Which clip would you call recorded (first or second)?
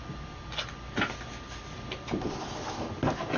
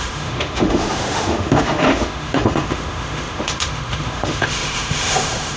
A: first